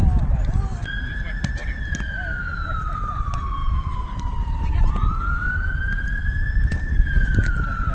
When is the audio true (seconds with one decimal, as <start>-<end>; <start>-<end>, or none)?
0.0-7.9